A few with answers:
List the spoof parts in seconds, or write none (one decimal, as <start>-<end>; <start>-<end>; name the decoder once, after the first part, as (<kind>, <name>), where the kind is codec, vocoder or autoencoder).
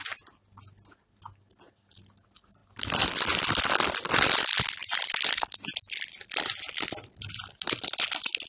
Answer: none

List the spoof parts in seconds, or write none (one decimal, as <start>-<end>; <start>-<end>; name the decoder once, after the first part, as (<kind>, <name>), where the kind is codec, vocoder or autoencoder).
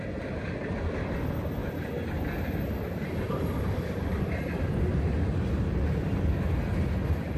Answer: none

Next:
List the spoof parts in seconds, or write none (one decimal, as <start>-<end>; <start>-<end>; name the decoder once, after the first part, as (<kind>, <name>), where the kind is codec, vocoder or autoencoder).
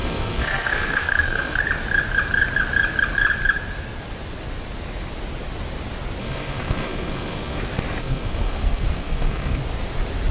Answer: 0.0-1.6 (codec, SNAC); 6.2-7.6; 8.0-9.6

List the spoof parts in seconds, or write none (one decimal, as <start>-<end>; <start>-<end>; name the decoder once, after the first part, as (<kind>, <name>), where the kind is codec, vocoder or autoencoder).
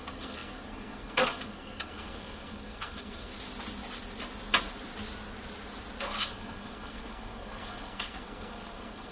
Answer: 0.0-3.3 (codec, SNAC); 6.0-9.1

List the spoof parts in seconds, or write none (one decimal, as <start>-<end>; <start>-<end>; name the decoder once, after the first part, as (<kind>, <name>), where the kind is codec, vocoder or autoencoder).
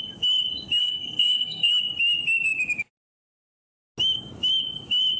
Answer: 0.8-1.7 (codec, SNAC)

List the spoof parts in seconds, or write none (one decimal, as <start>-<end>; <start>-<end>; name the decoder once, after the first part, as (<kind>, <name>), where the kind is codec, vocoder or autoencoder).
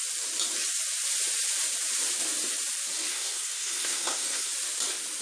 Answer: 3.1-4.5 (codec, SNAC)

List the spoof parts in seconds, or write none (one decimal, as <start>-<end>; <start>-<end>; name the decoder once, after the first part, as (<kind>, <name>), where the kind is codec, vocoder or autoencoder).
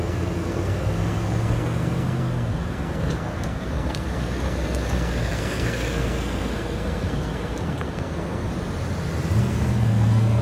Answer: 0.0-8.5 (codec, SNAC); 9.4-10.4